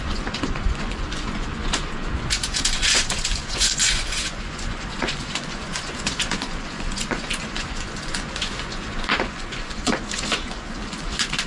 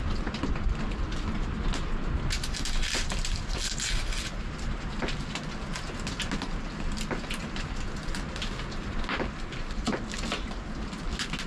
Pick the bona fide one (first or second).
second